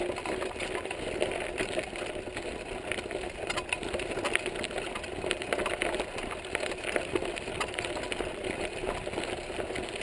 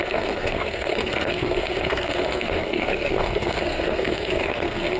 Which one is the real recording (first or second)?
first